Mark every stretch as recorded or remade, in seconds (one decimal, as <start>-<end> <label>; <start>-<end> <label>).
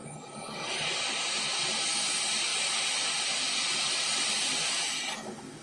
0.0-5.6 recorded